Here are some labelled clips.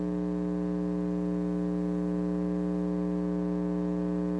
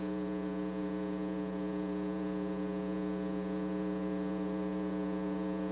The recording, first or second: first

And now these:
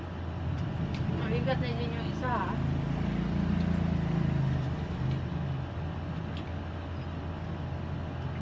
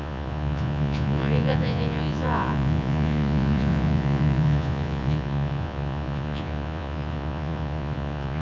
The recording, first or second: first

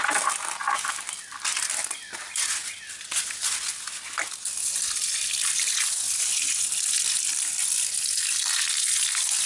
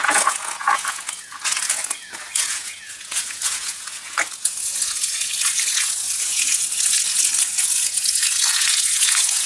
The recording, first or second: first